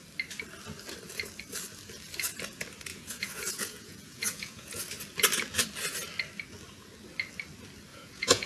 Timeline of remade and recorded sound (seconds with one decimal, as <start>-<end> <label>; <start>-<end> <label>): 0.0-2.9 recorded; 2.9-4.8 remade; 4.8-7.9 recorded; 7.9-8.5 remade